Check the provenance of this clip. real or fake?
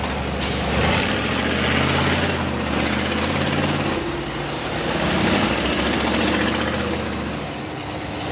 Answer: real